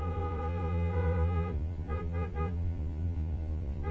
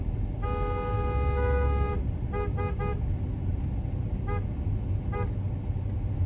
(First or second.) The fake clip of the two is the first